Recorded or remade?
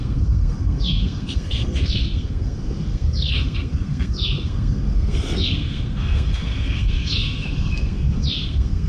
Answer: remade